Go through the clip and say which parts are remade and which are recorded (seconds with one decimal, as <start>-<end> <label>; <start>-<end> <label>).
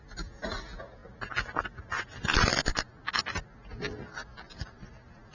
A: 0.0-5.3 recorded